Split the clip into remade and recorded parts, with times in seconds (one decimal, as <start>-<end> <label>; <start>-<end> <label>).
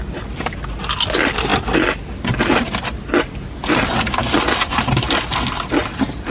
0.0-6.3 recorded